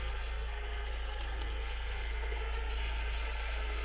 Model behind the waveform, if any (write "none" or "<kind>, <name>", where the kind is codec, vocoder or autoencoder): codec, SNAC